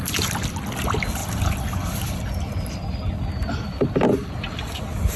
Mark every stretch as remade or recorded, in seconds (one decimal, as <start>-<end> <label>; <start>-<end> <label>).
0.0-5.2 recorded